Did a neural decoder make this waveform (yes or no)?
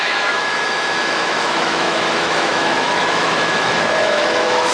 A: yes